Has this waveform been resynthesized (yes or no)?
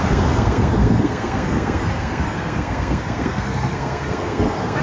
yes